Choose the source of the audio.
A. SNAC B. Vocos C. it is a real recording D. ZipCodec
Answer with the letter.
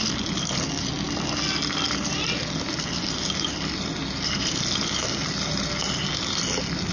C